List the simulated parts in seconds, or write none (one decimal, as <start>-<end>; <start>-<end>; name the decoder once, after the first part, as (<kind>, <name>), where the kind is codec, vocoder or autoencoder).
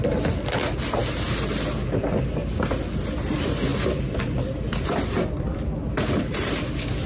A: 3.7-7.1 (vocoder, BigVGAN v2)